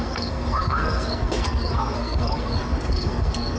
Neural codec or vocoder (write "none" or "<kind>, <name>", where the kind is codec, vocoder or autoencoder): codec, SNAC